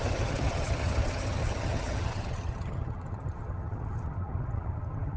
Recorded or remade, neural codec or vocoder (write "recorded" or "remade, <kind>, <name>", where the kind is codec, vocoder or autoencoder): remade, vocoder, HiFi-GAN